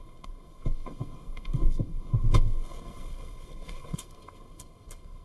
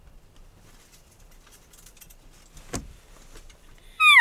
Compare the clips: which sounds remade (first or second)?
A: first